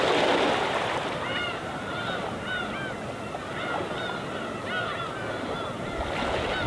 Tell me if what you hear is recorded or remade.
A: recorded